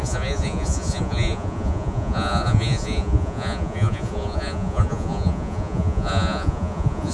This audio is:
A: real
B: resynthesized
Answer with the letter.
B